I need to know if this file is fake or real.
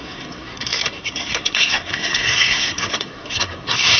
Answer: fake